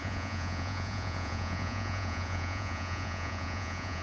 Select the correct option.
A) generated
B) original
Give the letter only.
A